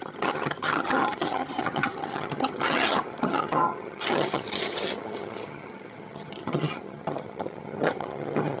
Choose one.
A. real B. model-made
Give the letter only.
B